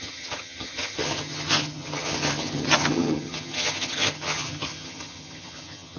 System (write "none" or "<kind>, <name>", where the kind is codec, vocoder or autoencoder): vocoder, HiFi-GAN